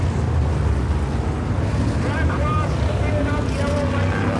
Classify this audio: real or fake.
real